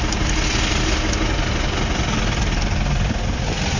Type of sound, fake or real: real